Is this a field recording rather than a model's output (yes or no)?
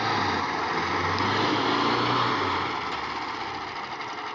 yes